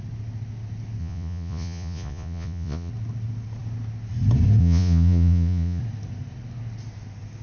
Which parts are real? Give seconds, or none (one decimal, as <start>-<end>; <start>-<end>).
0.0-1.0; 2.9-4.6; 5.8-7.4